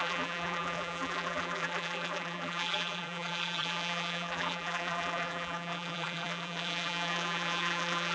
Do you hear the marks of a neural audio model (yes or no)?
yes